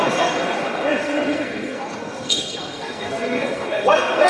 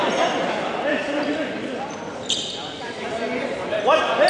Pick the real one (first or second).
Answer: second